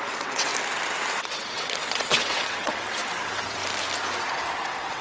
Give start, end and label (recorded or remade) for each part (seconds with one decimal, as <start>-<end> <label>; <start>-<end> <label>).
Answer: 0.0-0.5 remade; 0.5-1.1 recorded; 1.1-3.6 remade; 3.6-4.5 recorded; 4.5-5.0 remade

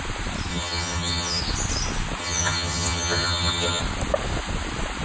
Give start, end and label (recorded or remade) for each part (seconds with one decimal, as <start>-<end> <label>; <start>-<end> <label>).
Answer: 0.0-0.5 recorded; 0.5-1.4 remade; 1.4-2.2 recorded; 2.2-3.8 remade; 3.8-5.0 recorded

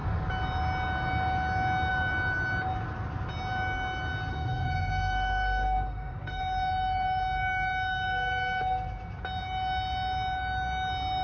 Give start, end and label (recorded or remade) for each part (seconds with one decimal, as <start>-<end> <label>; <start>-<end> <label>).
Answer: 0.0-4.3 recorded; 4.3-6.4 remade; 6.4-11.2 recorded

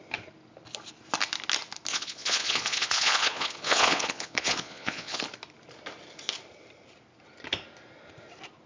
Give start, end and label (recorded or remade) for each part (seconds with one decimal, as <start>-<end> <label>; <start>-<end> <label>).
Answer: 0.0-1.9 recorded; 1.9-5.2 remade; 5.2-8.7 recorded

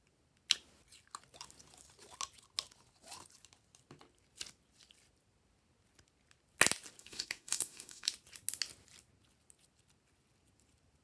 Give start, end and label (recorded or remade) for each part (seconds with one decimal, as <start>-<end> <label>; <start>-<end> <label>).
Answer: 0.0-7.0 recorded; 7.0-8.1 remade; 8.1-11.0 recorded

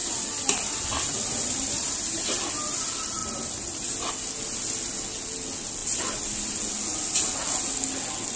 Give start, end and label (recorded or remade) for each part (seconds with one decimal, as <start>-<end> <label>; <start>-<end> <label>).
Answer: 0.0-2.8 remade; 2.8-3.2 recorded; 3.2-4.1 remade; 4.1-8.4 recorded